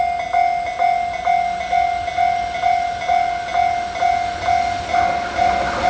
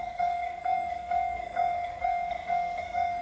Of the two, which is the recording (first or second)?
first